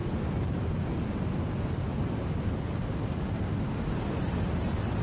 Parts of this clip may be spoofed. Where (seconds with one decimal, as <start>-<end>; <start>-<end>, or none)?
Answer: 0.0-1.9